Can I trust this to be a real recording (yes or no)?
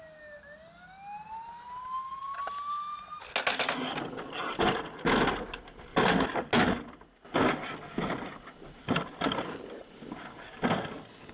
yes